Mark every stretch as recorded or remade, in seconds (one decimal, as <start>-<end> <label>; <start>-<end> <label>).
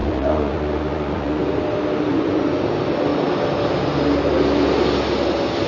0.0-1.4 remade; 1.4-2.1 recorded; 2.1-2.7 remade; 2.7-5.7 recorded